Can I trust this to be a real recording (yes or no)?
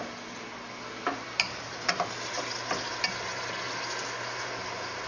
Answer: yes